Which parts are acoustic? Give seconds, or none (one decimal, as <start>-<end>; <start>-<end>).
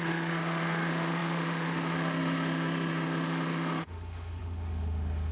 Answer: none